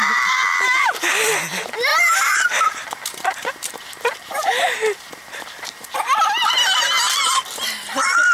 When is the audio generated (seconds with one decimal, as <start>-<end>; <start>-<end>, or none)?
1.9-6.0